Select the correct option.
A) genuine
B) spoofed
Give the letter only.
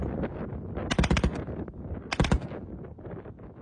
A